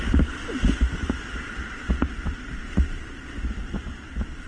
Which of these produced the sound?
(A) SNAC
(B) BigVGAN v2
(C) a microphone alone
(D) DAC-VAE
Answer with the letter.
C